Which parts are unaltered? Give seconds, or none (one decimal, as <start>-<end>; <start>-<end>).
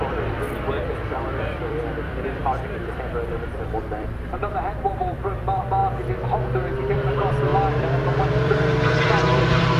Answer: 5.8-6.9; 7.5-8.3